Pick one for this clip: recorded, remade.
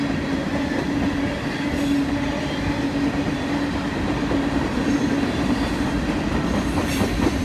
recorded